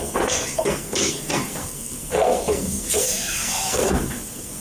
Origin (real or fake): fake